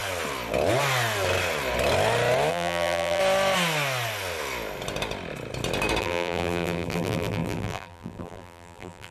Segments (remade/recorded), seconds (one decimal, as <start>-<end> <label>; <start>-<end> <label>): 0.0-2.5 recorded; 2.5-3.2 remade; 3.2-6.0 recorded; 6.0-9.1 remade